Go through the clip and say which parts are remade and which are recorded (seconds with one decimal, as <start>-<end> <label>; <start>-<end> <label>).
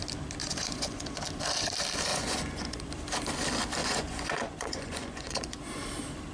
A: 0.0-0.4 recorded; 0.4-1.2 remade; 1.2-2.1 recorded; 2.1-2.9 remade; 2.9-3.8 recorded; 3.8-5.6 remade; 5.6-6.3 recorded